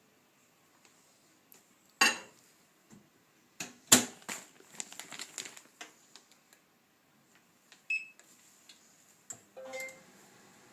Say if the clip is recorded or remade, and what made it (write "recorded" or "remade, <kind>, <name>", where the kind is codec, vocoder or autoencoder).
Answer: recorded